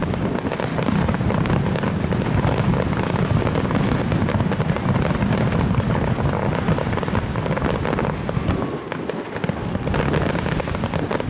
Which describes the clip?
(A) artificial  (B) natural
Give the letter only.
B